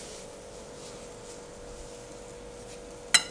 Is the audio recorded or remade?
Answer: recorded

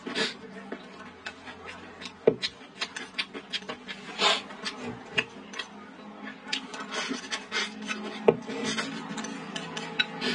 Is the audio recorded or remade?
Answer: recorded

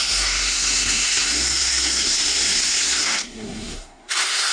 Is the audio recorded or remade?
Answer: remade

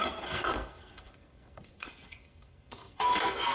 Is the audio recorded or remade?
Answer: remade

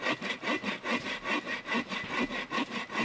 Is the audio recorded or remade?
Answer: recorded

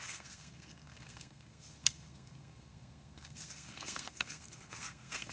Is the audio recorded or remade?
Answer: remade